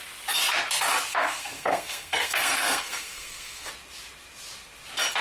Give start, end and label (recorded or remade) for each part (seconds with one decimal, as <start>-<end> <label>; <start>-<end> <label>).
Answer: 0.0-1.1 recorded; 1.1-3.7 remade; 3.7-5.2 recorded